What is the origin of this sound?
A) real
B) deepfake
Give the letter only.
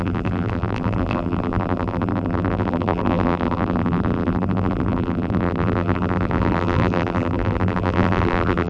B